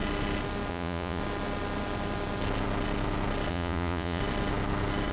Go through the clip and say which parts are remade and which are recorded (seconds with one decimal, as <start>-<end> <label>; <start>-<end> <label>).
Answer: 0.0-0.7 recorded; 0.7-1.2 remade; 1.2-3.5 recorded; 3.5-4.2 remade; 4.2-5.1 recorded